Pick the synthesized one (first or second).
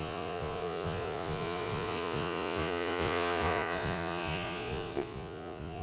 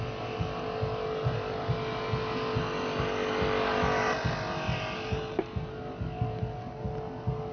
first